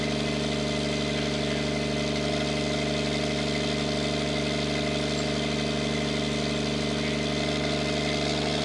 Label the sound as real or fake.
real